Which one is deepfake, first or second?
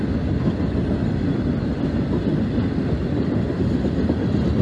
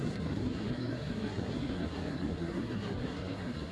second